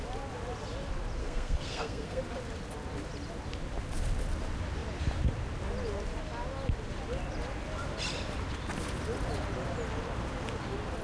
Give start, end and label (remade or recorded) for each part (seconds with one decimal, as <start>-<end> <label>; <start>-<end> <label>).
0.0-1.2 recorded; 1.2-2.2 remade; 2.2-11.0 recorded